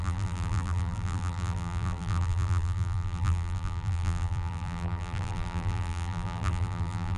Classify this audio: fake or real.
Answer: fake